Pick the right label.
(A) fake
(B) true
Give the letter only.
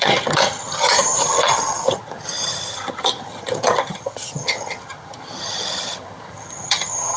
A